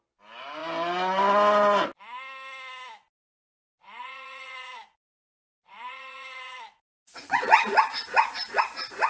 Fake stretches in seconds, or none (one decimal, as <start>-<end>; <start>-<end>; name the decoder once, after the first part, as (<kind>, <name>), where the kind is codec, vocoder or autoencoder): 3.4-8.6 (vocoder, Vocos)